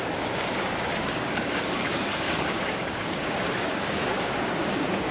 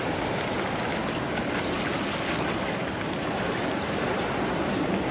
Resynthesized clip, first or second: first